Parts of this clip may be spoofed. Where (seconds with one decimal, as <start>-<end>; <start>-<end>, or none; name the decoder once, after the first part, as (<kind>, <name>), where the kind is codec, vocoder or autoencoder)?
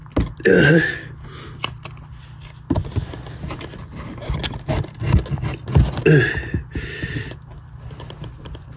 none